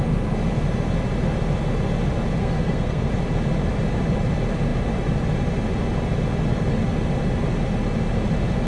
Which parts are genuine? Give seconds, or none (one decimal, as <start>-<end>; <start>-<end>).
0.0-2.4; 3.1-8.7